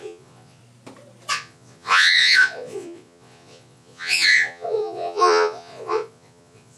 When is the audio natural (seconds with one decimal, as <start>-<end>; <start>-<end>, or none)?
0.6-1.3